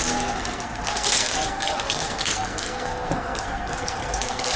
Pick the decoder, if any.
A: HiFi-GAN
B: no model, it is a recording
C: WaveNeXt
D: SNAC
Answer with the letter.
D